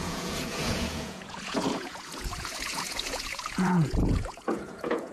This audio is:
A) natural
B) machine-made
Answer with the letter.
B